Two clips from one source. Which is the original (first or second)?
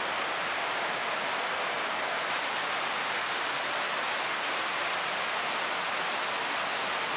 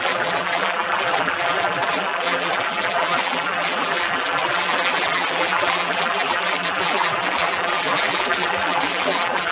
first